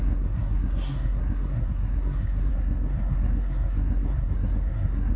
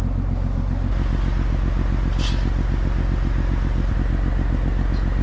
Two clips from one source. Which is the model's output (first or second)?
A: first